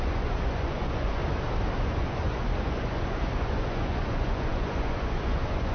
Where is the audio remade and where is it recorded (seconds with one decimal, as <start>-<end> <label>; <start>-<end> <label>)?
0.0-1.2 remade; 1.2-1.8 recorded; 1.8-5.7 remade